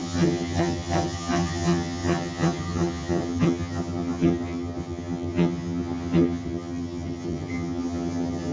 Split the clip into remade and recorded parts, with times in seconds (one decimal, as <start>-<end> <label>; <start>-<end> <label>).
0.0-8.5 remade